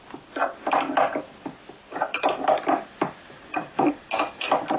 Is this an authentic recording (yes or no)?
yes